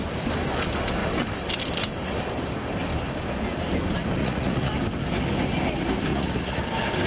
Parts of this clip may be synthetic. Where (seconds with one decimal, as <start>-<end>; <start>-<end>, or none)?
4.2-4.7; 6.1-6.6